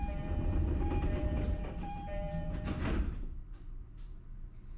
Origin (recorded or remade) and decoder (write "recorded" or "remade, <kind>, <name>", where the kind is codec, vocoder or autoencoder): remade, vocoder, BigVGAN v2